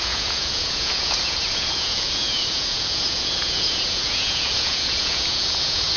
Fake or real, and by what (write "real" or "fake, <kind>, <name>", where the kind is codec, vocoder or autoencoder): fake, vocoder, Vocos